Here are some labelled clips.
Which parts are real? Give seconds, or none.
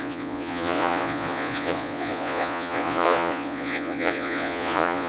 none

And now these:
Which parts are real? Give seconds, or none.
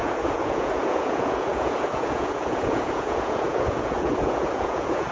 none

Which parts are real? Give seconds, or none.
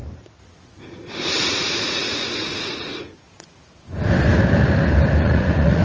0.0-1.4; 3.1-5.2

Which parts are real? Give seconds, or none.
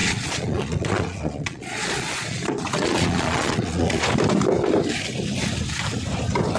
4.0-6.6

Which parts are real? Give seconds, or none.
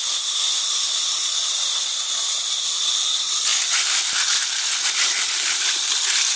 0.0-6.4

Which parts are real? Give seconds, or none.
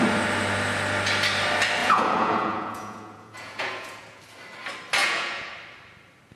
0.0-1.8; 4.2-5.0; 5.5-6.4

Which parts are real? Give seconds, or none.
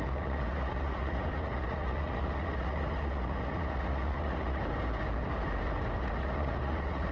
4.6-6.2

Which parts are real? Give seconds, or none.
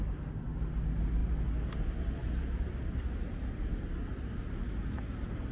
0.0-5.5